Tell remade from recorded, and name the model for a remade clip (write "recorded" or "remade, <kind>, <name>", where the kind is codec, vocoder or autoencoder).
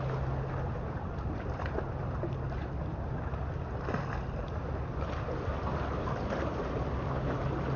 recorded